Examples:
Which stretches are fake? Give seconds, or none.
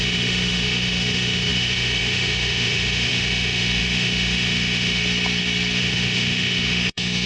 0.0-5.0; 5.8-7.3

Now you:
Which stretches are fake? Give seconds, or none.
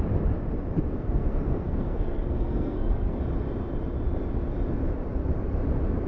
0.9-3.2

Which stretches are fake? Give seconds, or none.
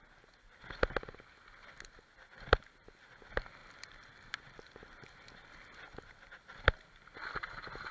none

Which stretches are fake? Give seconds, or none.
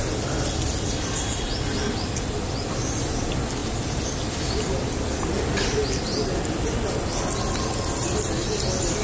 none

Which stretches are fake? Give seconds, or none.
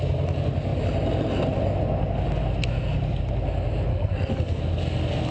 3.9-4.6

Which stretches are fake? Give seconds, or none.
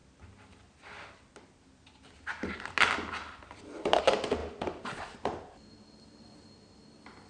none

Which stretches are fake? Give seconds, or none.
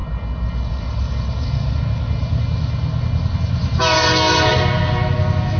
none